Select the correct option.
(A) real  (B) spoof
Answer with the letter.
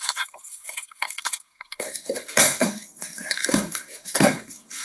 B